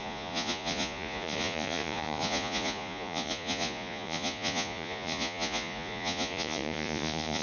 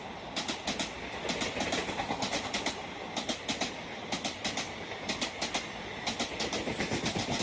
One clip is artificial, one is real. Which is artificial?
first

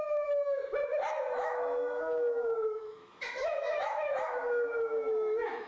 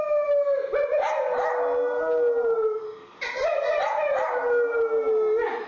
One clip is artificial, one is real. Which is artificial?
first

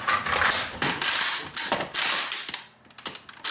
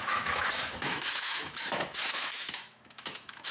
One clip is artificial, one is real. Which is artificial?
second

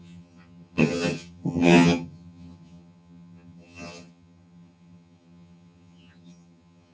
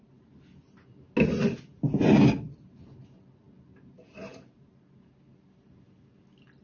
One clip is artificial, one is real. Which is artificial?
first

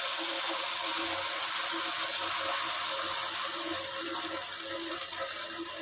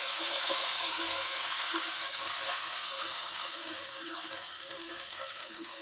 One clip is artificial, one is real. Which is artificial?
second